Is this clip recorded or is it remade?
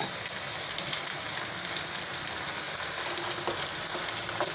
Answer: recorded